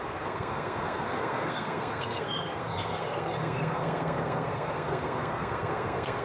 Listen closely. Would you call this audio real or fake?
fake